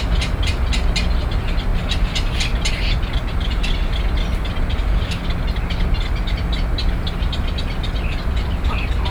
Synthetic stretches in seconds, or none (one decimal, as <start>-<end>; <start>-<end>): none